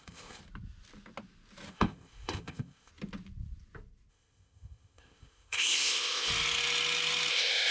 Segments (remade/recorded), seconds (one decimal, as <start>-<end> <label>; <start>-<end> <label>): 0.0-0.4 remade; 0.4-1.7 recorded; 1.7-2.9 remade; 2.9-4.1 recorded; 4.1-6.3 remade; 6.3-7.3 recorded; 7.3-7.7 remade